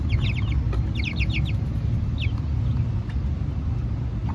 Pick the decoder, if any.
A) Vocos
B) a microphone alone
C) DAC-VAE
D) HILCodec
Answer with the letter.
B